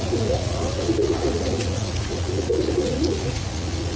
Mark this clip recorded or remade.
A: remade